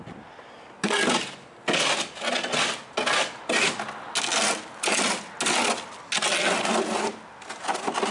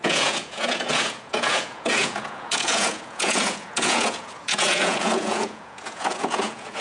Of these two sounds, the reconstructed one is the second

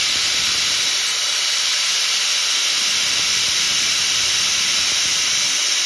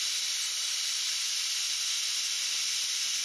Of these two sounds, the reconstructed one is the second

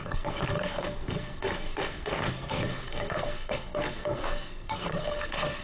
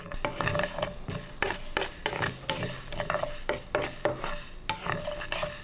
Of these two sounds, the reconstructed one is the first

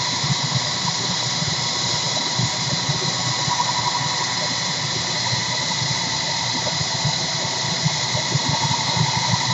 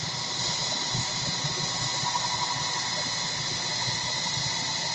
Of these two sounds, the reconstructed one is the first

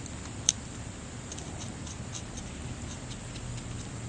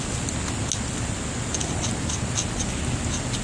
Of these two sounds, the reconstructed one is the first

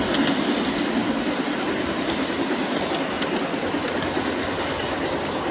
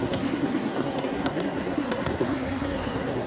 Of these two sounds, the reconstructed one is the second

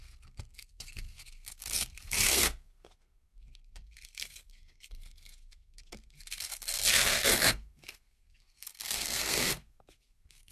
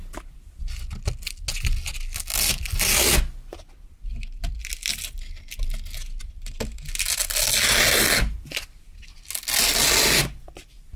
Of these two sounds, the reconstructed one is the first